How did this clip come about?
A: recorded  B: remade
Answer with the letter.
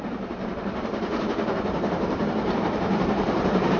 B